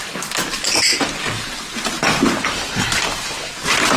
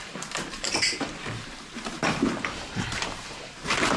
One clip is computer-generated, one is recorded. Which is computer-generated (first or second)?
second